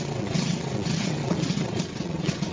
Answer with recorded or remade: remade